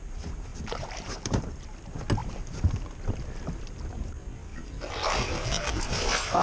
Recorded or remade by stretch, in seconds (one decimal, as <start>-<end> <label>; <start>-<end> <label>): 0.0-0.5 recorded; 0.5-1.5 remade; 1.5-4.5 recorded; 4.5-5.8 remade; 5.8-6.4 recorded